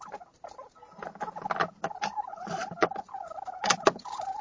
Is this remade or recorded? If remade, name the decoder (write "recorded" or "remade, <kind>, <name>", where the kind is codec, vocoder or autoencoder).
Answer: recorded